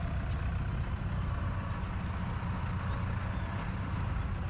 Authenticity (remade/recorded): recorded